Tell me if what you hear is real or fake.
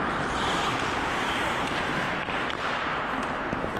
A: fake